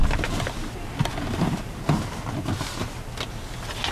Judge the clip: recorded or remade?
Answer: recorded